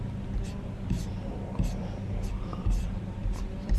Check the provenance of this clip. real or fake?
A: fake